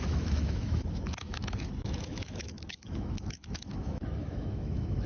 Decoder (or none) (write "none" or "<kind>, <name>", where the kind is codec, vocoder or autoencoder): autoencoder, DAC-VAE